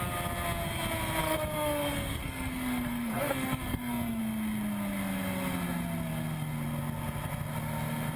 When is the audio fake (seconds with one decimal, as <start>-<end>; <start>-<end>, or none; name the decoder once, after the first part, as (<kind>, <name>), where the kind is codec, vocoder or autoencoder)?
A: 1.2-4.2 (codec, SNAC)

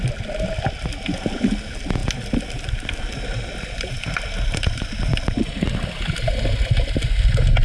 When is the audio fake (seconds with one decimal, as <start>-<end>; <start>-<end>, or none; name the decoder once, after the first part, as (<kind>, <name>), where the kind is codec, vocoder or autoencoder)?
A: none